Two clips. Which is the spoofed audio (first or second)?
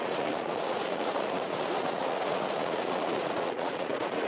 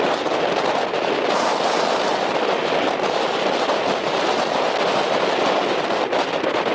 first